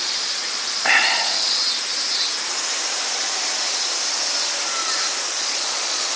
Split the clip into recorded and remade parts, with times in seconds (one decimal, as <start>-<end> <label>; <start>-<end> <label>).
0.0-1.6 remade; 1.6-5.3 recorded; 5.3-6.2 remade